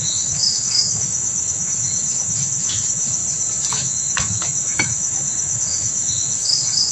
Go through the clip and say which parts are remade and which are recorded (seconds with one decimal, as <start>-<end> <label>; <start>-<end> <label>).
0.0-3.2 remade; 3.2-3.7 recorded; 3.7-6.9 remade